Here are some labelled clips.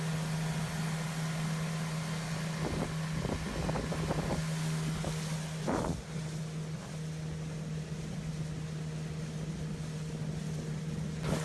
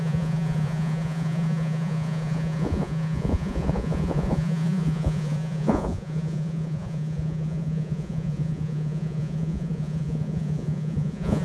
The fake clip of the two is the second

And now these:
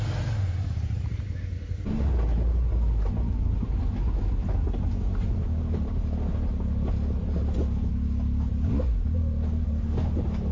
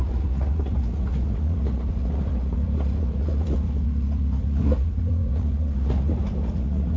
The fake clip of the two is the second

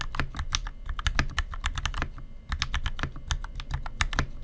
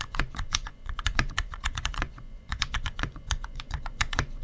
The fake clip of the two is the second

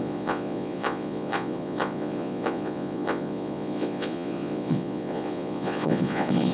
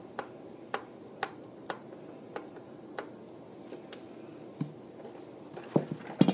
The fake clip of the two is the first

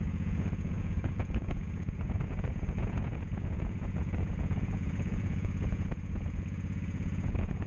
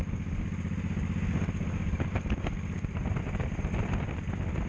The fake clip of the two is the first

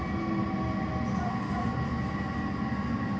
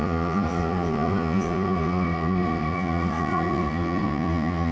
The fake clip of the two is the second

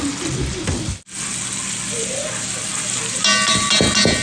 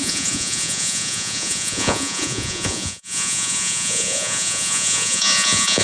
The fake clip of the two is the second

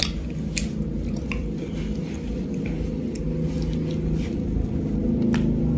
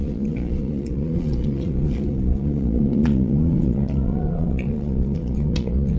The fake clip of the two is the second